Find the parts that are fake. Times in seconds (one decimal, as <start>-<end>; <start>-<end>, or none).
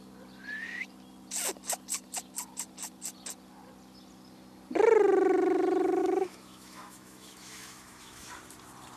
6.0-8.3